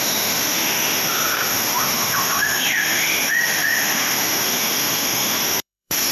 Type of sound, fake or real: fake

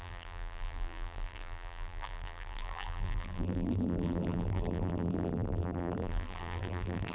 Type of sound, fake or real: fake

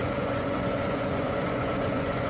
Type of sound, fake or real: fake